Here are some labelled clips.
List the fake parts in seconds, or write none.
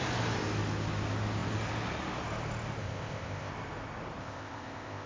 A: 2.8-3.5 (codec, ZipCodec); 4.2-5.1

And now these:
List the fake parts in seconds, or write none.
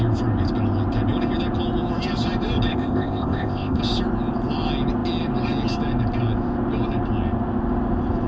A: 2.7-3.8 (codec, ZipCodec)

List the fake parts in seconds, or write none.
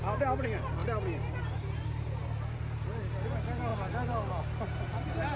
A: none